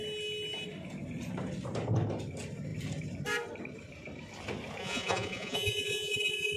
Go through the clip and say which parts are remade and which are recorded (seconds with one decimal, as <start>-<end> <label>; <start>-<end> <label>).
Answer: 0.0-4.8 recorded; 4.8-6.6 remade